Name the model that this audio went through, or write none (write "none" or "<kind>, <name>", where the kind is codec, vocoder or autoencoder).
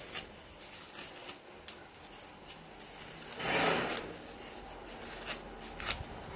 none